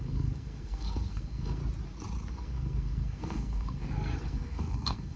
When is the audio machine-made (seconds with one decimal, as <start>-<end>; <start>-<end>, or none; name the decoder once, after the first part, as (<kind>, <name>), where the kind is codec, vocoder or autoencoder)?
0.0-1.6 (codec, SNAC); 2.3-5.2